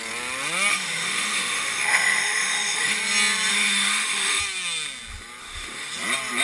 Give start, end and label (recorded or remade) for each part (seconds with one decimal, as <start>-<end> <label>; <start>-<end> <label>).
0.0-0.7 recorded; 0.7-3.0 remade; 3.0-3.5 recorded; 3.5-4.4 remade; 4.4-5.4 recorded; 5.4-5.9 remade; 5.9-6.4 recorded